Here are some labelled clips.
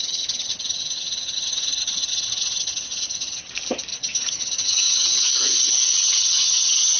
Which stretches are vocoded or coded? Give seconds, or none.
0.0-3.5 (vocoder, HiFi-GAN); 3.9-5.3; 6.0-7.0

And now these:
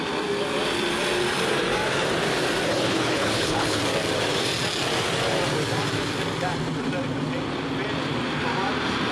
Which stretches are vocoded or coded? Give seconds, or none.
2.7-3.8 (codec, HILCodec)

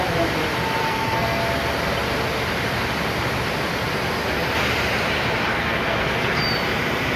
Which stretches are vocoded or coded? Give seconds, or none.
0.8-1.4 (codec, SNAC); 5.5-6.4

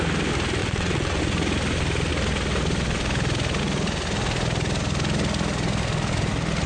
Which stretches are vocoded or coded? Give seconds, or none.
0.6-1.2 (vocoder, WaveNeXt)